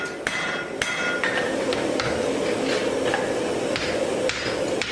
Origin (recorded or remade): recorded